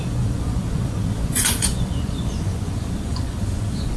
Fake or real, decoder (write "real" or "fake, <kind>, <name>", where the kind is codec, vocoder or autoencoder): fake, vocoder, Vocos